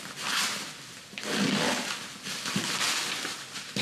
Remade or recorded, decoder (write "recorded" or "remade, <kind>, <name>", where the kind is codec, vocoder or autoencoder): recorded